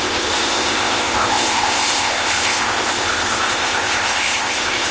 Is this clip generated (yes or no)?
yes